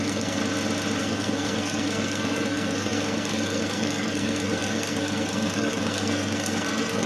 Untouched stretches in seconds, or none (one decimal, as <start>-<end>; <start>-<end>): 0.4-1.0